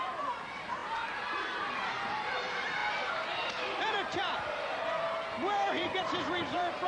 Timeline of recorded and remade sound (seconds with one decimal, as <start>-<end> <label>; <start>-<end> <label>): 0.0-2.8 remade; 2.8-3.8 recorded; 3.8-6.9 remade